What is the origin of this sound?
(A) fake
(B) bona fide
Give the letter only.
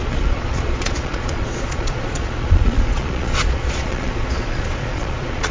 A